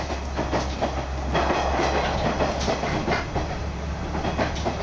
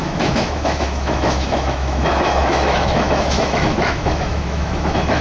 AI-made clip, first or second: second